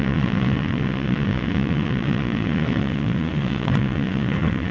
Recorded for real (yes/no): no